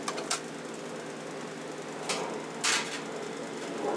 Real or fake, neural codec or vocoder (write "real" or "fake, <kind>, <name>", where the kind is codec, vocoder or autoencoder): real